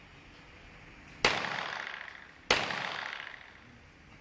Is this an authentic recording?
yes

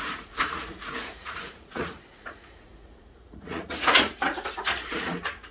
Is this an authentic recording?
no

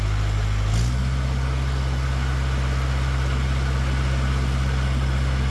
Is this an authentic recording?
yes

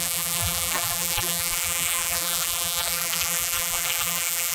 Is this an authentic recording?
no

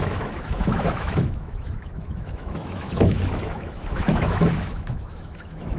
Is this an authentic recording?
no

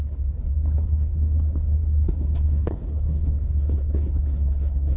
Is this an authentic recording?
no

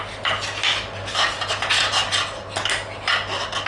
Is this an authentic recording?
yes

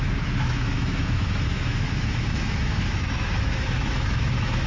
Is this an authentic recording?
no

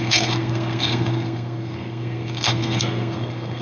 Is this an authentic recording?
no